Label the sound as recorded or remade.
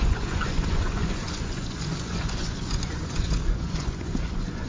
remade